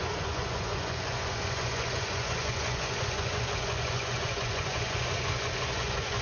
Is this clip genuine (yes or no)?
no